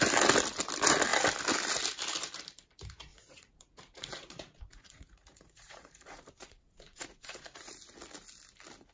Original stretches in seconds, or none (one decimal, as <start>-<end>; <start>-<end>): 0.0-3.1; 7.7-8.9